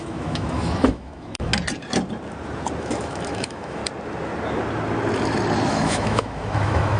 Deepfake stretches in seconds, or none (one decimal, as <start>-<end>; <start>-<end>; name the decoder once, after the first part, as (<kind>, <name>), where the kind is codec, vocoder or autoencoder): 0.0-1.5 (autoencoder, DAC-VAE); 2.8-3.8; 5.7-7.0